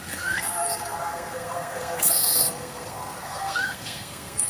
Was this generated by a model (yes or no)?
yes